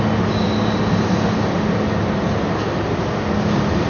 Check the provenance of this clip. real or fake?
real